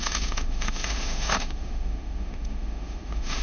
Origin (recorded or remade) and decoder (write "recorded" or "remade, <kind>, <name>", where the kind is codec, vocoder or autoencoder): remade, autoencoder, DAC-VAE